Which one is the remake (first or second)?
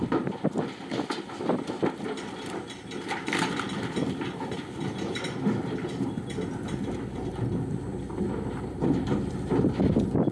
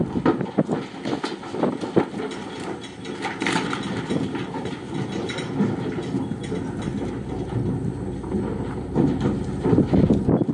first